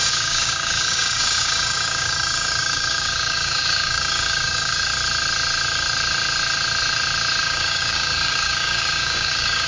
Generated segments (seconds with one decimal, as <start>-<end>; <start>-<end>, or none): 0.0-4.9; 7.4-9.7